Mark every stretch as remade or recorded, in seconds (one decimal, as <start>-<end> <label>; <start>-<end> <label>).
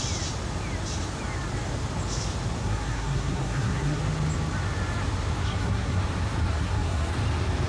0.0-2.6 recorded; 2.6-4.0 remade; 4.0-5.4 recorded; 5.4-6.0 remade; 6.0-6.5 recorded; 6.5-7.1 remade; 7.1-7.7 recorded